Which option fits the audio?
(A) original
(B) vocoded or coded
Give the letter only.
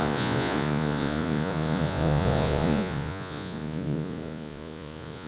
B